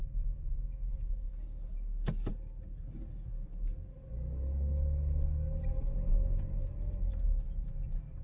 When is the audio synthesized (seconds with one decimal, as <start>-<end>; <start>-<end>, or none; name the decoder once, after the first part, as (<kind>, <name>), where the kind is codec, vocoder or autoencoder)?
none